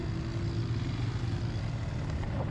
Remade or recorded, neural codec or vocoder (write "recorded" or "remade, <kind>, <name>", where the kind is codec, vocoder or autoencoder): recorded